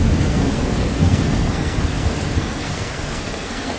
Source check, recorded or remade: remade